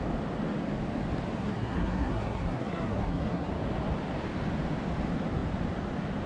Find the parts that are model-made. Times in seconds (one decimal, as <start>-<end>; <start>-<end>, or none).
1.4-3.5